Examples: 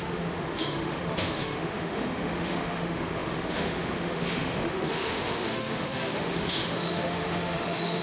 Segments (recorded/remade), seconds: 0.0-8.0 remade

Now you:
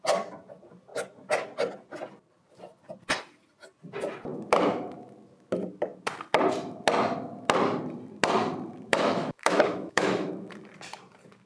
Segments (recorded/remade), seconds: 0.0-8.9 recorded; 8.9-10.3 remade; 10.3-11.5 recorded

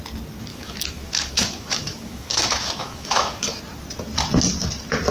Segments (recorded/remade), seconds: 0.0-0.5 recorded; 0.5-3.6 remade; 3.6-5.1 recorded

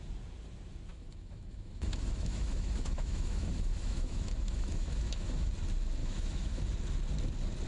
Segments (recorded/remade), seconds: 0.0-0.9 recorded; 0.9-5.5 remade; 5.5-6.0 recorded; 6.0-6.6 remade; 6.6-7.7 recorded